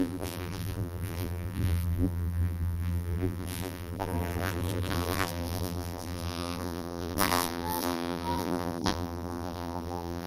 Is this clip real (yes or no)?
no